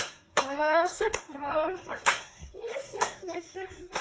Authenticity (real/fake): fake